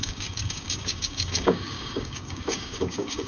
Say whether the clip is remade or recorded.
remade